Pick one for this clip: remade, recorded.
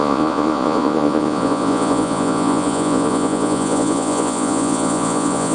remade